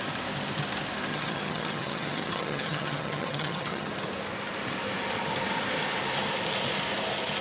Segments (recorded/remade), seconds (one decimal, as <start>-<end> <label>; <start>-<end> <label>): 0.0-1.1 recorded; 1.1-3.9 remade; 3.9-7.4 recorded